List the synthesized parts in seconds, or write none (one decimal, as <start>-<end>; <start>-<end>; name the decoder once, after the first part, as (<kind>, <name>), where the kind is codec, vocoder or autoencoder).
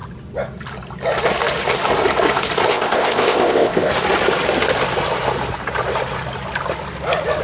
2.7-3.9 (codec, ZipCodec)